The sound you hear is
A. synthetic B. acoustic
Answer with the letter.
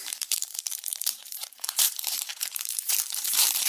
A